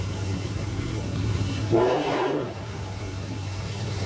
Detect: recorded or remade remade